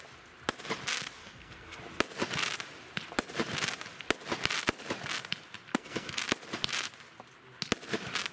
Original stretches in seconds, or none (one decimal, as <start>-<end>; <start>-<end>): 0.0-1.2; 1.8-5.7; 6.2-8.3